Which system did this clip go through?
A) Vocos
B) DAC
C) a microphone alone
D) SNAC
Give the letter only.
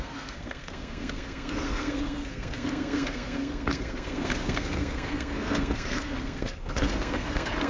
D